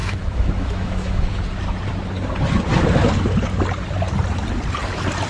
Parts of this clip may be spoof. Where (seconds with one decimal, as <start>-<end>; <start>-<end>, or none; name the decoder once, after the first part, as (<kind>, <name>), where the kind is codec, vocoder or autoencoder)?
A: 0.0-1.4 (autoencoder, DAC-VAE)